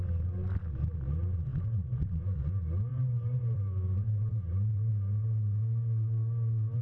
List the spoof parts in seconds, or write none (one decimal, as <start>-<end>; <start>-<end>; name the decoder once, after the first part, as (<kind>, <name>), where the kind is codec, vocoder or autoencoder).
1.5-2.1 (vocoder, BigVGAN v2); 2.9-4.9